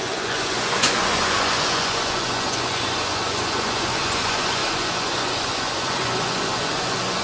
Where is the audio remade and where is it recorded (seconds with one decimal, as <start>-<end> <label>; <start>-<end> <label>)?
0.0-7.2 remade